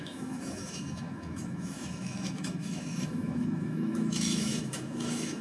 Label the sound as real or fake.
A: fake